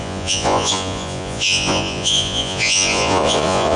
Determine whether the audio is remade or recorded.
remade